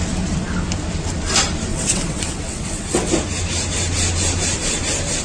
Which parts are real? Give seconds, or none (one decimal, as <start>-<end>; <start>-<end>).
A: 0.0-1.7; 3.1-5.2